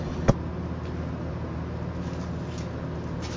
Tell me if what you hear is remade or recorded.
recorded